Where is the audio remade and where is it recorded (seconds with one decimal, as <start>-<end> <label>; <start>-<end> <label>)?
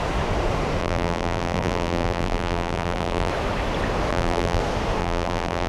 0.0-0.8 recorded; 0.8-3.3 remade; 3.3-4.1 recorded; 4.1-4.6 remade; 4.6-5.0 recorded; 5.0-5.7 remade